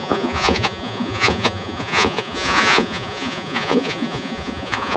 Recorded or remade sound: remade